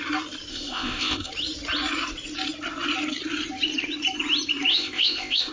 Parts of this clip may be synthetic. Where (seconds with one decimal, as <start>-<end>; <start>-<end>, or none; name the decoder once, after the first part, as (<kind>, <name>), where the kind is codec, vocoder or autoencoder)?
0.5-1.3 (codec, ZipCodec); 4.7-5.5